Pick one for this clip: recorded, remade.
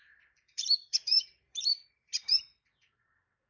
remade